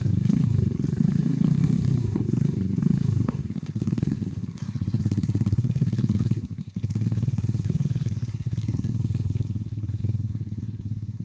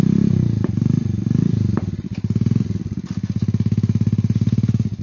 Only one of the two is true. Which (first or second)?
second